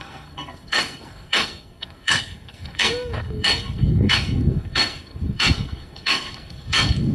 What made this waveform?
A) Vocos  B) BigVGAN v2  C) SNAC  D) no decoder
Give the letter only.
C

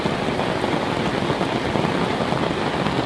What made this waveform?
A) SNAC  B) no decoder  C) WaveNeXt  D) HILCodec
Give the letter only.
B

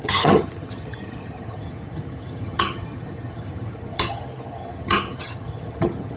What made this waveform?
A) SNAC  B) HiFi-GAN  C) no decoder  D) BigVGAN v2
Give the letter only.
B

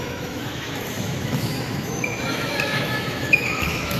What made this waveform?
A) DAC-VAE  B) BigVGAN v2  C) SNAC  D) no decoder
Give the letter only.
A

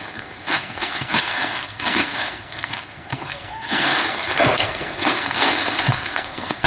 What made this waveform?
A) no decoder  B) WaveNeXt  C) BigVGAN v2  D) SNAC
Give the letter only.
D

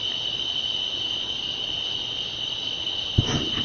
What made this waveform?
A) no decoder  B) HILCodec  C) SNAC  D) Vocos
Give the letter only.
A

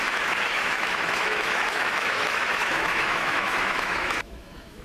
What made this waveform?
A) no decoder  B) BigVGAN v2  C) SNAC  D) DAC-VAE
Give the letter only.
D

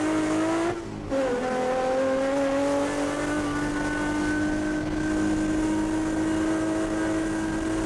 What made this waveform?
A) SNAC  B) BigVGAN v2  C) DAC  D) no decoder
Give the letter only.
D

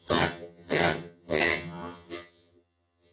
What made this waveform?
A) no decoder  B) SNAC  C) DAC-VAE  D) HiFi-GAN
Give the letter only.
D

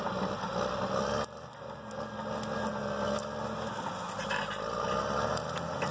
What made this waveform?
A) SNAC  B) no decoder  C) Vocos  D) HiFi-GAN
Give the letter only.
B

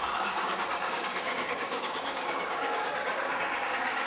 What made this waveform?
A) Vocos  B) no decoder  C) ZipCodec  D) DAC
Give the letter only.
D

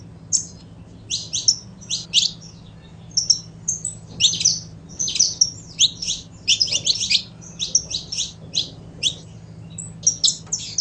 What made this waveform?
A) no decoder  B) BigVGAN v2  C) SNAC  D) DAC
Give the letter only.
A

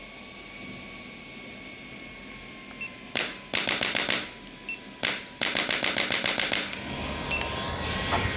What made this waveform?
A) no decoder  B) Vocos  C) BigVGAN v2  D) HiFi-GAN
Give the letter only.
A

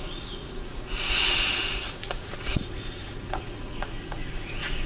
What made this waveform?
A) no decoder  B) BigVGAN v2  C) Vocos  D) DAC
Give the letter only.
C